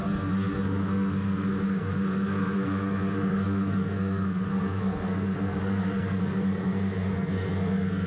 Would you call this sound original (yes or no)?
no